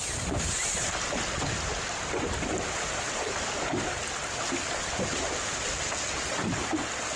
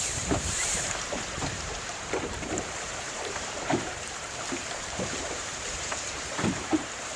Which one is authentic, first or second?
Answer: first